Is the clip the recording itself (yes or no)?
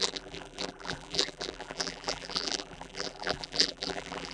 no